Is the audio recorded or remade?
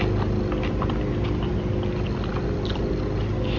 recorded